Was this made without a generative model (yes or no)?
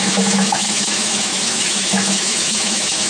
no